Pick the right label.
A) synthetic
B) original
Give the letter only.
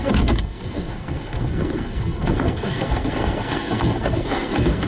A